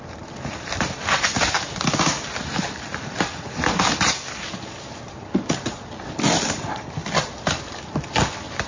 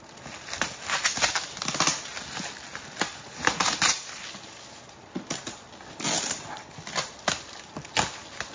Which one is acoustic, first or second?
second